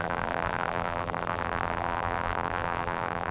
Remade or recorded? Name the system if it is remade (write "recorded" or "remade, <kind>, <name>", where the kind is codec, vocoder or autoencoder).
remade, vocoder, BigVGAN v2